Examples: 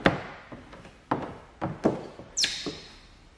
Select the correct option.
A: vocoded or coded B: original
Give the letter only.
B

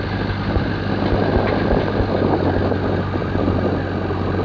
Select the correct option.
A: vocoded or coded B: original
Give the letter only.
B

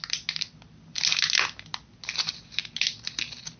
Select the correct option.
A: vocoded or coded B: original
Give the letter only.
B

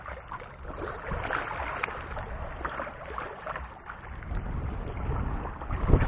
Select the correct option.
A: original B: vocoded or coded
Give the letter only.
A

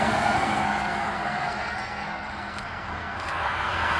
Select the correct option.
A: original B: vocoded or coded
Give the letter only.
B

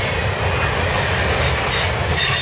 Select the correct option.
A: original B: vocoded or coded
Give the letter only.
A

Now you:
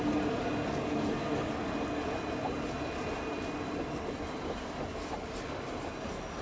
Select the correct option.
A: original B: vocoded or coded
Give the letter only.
A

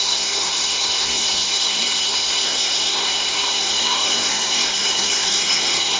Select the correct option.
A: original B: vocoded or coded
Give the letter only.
B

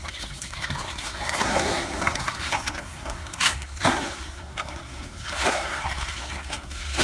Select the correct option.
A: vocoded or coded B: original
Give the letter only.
A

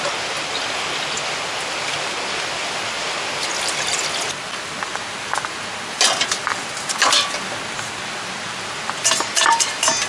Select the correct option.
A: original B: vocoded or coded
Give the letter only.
A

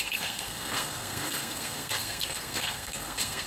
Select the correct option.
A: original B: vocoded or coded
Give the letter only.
B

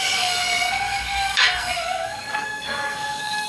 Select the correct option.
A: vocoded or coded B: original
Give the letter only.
A